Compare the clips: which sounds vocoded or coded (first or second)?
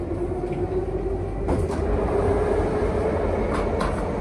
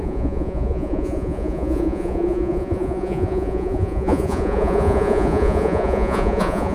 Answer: second